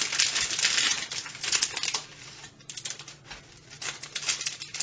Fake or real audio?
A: real